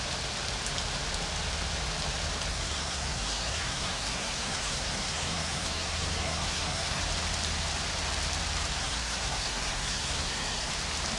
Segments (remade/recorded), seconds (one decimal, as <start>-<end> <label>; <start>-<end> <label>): 0.0-2.5 recorded; 2.5-7.0 remade; 7.0-8.8 recorded; 8.8-10.7 remade; 10.7-11.2 recorded